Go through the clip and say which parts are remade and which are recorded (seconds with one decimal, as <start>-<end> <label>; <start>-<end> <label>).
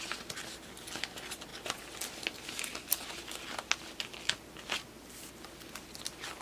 0.0-6.4 recorded